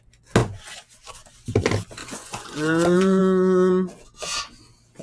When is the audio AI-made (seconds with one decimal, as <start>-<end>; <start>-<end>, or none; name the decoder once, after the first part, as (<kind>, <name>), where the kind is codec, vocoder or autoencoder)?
2.0-3.2 (vocoder, Vocos)